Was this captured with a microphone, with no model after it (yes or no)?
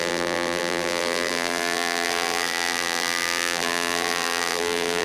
no